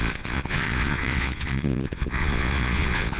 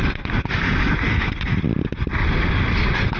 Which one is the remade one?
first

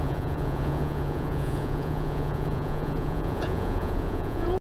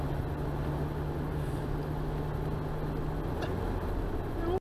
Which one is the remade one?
first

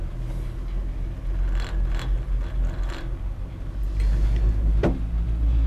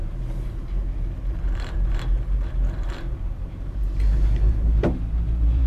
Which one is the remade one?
second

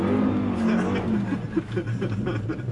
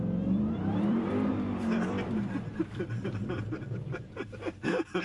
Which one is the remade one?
second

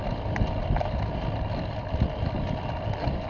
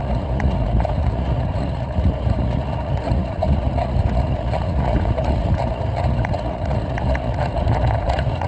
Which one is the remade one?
second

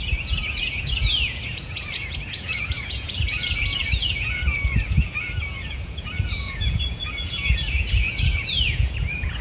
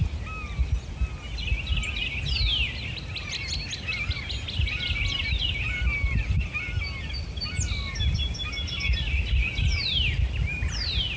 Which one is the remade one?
first